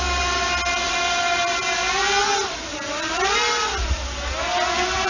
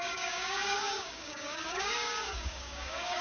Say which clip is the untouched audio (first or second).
first